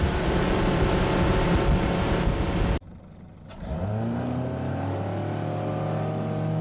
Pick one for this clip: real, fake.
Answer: real